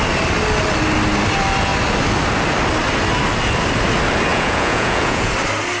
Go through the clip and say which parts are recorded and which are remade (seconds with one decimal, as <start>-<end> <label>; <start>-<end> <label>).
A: 0.0-4.3 recorded; 4.3-5.3 remade; 5.3-5.8 recorded